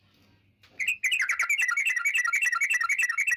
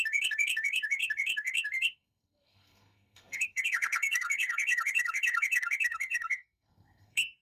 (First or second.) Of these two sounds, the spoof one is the second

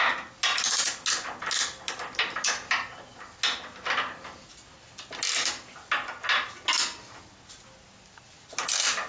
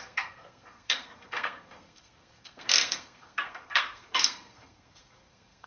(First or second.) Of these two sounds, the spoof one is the second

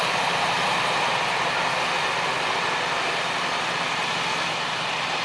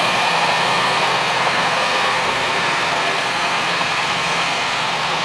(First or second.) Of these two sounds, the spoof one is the second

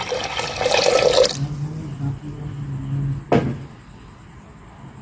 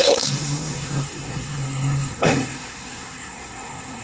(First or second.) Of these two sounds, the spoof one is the second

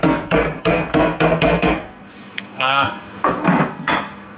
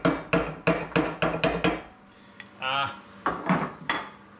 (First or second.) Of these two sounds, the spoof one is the first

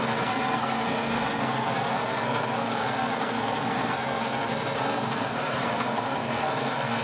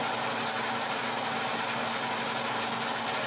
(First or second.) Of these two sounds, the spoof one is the first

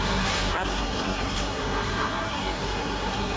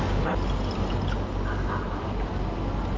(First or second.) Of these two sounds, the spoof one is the first